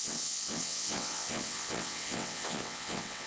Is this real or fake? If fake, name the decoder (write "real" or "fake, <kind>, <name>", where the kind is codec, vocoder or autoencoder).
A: fake, vocoder, WaveNeXt